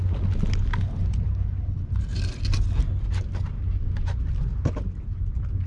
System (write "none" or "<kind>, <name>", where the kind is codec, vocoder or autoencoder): none